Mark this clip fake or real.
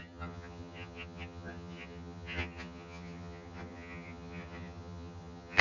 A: fake